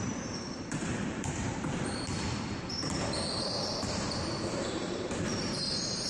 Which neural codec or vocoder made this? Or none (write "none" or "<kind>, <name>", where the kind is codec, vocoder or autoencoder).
vocoder, BigVGAN v2